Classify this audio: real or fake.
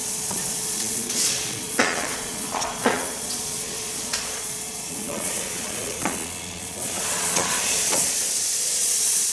fake